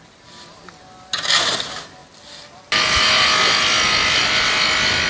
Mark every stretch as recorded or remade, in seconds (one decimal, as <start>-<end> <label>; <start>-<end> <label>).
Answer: 0.0-5.1 recorded